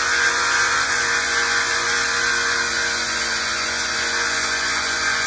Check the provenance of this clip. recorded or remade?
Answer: remade